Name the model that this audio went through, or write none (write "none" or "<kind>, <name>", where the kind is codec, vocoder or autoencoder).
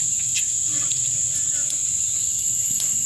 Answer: vocoder, Vocos